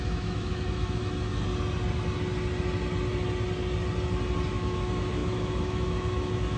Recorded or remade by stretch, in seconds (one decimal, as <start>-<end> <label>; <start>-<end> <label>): 0.0-1.3 remade; 1.3-4.5 recorded; 4.5-6.6 remade